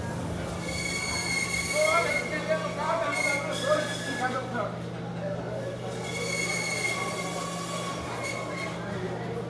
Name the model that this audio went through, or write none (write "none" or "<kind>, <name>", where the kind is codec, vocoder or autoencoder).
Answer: none